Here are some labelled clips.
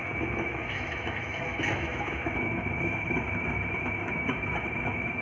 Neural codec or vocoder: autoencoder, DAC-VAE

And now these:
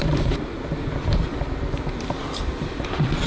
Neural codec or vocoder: vocoder, BigVGAN v2